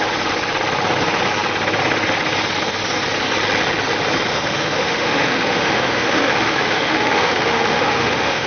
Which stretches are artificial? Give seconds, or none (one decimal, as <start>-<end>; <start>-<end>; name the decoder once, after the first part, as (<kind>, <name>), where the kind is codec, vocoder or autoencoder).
4.3-8.5 (autoencoder, DAC-VAE)